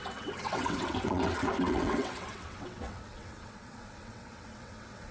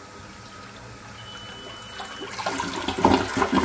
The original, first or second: second